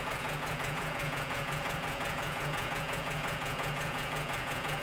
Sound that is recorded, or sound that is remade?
remade